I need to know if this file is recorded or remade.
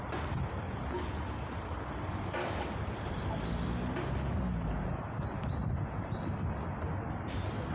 recorded